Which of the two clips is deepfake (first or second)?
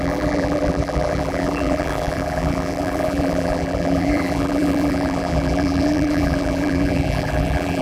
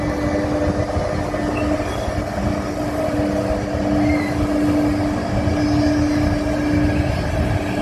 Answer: first